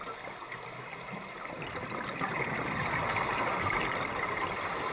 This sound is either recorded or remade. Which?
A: recorded